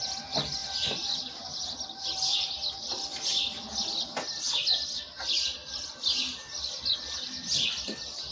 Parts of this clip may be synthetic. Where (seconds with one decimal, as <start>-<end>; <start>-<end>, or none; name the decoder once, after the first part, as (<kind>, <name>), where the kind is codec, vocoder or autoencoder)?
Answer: none